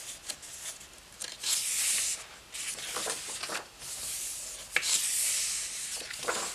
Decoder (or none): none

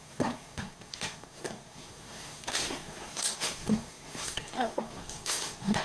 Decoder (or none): codec, SNAC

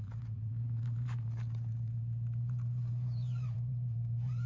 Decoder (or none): vocoder, BigVGAN v2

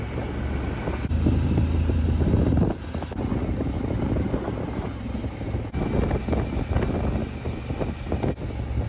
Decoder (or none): none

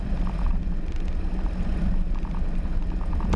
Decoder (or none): none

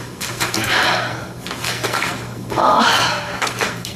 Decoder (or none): codec, SNAC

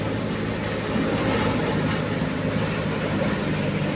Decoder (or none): none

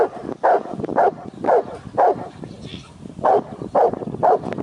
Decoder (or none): none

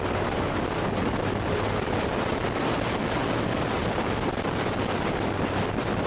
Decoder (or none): none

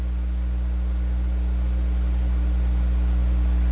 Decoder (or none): none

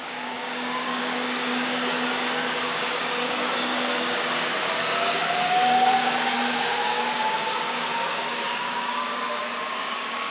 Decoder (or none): codec, DAC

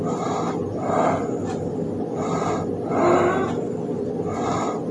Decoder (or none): none